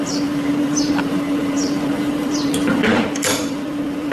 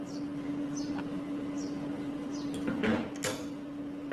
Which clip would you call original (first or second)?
second